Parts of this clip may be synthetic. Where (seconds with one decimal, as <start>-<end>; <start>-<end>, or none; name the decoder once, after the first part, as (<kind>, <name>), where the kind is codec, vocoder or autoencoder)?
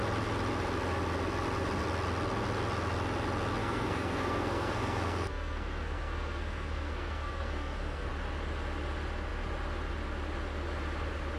3.6-8.1 (codec, SNAC)